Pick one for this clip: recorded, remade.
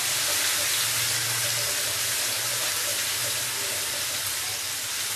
recorded